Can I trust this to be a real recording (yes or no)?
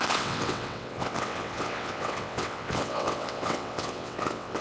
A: no